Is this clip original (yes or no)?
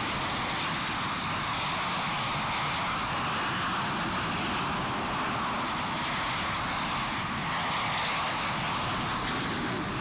yes